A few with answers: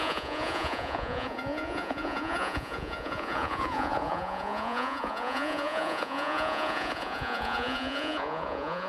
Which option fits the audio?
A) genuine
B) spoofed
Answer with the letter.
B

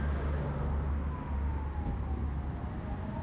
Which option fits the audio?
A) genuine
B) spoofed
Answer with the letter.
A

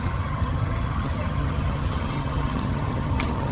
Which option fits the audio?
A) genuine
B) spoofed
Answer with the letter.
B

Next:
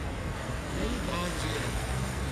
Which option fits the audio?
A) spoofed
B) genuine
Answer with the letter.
A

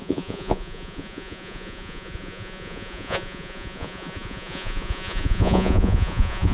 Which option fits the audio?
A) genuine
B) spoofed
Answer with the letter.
B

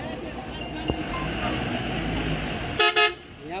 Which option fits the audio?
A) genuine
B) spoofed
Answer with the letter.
A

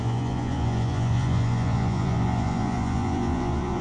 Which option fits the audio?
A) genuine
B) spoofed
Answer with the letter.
B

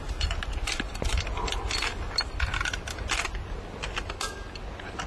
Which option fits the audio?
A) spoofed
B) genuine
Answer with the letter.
B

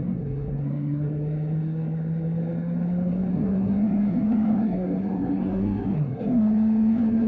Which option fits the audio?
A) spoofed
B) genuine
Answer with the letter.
A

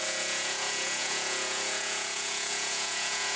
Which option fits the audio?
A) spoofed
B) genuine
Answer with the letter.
A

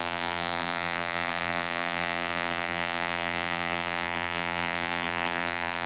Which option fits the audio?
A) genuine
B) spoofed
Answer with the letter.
B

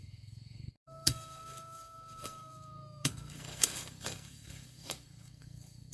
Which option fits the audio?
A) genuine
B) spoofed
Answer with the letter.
B